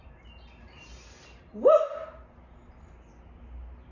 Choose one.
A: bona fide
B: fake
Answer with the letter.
A